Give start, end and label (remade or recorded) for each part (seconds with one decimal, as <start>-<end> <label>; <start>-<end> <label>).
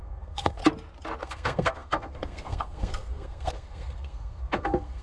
0.0-0.6 remade; 0.6-1.2 recorded; 1.2-5.0 remade